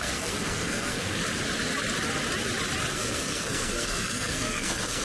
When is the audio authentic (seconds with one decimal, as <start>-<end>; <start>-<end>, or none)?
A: 1.2-2.9